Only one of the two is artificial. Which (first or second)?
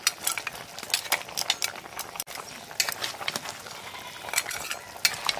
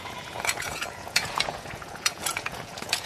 second